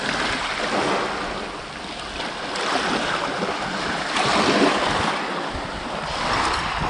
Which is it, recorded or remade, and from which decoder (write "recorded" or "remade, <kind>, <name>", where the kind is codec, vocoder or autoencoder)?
recorded